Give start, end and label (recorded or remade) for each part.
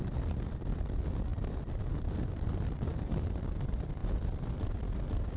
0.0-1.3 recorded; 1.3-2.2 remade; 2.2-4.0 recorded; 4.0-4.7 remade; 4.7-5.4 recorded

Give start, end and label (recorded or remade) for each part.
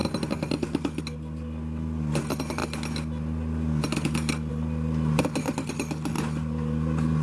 0.0-7.2 recorded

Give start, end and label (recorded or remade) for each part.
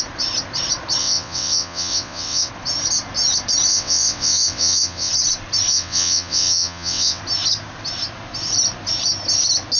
0.0-1.0 recorded; 1.0-2.5 remade; 2.5-3.7 recorded; 3.7-5.1 remade; 5.1-5.7 recorded; 5.7-7.2 remade; 7.2-9.8 recorded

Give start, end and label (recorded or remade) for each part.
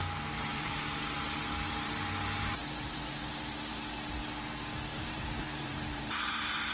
0.0-0.5 recorded; 0.5-1.4 remade; 1.4-2.6 recorded; 2.6-3.9 remade; 3.9-4.9 recorded; 4.9-6.7 remade